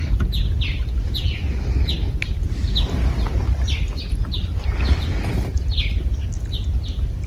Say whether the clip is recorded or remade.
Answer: recorded